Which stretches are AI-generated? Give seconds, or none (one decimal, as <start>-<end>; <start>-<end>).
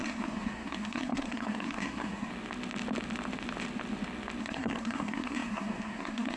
0.0-2.3; 4.4-6.4